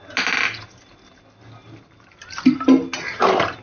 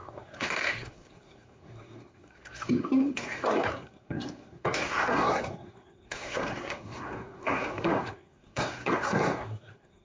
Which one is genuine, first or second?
first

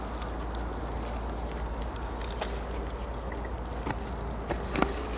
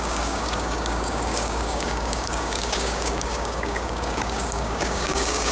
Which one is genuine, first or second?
first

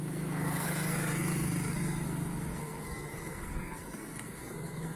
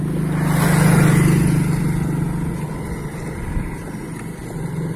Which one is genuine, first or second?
second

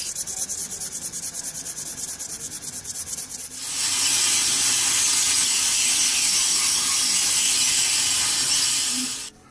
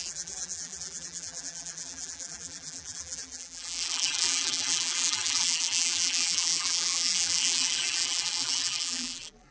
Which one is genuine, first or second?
first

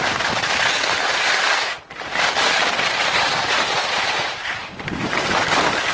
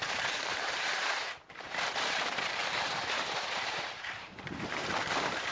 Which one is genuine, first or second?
first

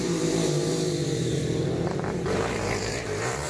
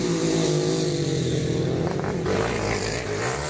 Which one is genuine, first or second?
second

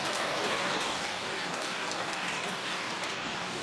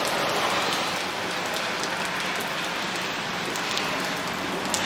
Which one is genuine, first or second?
second